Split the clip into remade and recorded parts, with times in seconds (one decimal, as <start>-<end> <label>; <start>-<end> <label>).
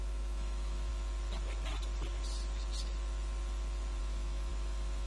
0.0-0.9 remade; 0.9-4.0 recorded; 4.0-5.1 remade